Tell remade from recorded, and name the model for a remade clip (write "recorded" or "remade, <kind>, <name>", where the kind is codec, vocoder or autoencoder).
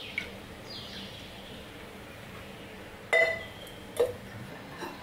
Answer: recorded